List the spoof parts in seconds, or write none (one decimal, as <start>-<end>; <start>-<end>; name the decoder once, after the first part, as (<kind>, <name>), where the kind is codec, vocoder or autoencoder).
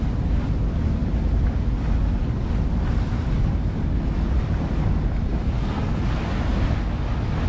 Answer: none